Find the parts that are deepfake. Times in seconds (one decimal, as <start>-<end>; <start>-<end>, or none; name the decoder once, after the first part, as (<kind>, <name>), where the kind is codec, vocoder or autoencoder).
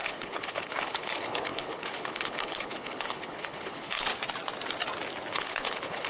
0.0-4.1 (codec, HILCodec); 5.3-6.1